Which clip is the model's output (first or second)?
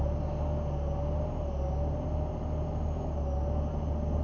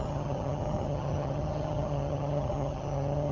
second